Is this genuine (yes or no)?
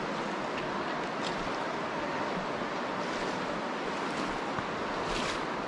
yes